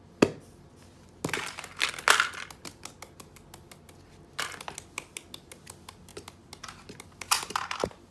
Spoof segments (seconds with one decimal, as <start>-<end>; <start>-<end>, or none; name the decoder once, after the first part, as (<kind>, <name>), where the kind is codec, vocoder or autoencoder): none